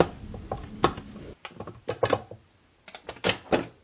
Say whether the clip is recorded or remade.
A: recorded